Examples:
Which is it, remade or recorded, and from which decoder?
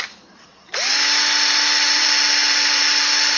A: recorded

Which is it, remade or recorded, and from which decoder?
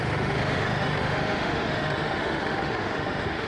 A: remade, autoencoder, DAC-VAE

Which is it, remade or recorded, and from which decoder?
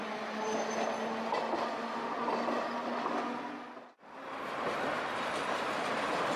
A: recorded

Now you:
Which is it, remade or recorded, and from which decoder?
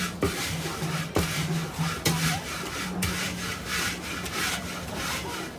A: recorded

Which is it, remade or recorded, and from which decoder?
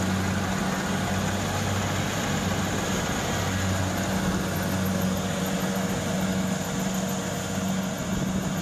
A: recorded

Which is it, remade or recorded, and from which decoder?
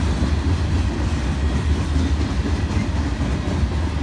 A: recorded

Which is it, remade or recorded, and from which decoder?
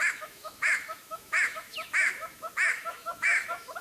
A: remade, autoencoder, DAC-VAE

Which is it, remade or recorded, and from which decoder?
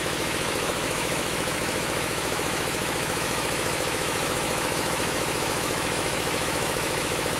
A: remade, autoencoder, DAC-VAE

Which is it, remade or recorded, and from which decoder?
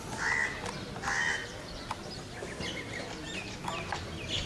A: recorded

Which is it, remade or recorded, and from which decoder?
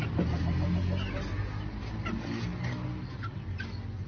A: recorded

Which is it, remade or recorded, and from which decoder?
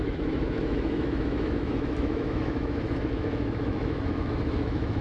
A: remade, autoencoder, DAC-VAE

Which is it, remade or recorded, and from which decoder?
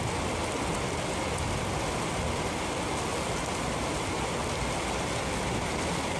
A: recorded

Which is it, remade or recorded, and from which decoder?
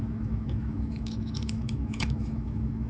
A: remade, autoencoder, DAC-VAE